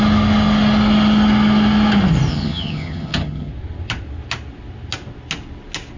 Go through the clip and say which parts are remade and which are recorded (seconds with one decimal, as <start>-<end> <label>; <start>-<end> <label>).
0.0-2.3 recorded; 2.3-3.5 remade; 3.5-6.0 recorded